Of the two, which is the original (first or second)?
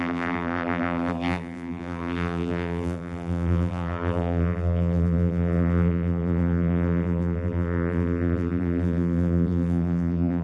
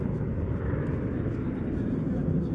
second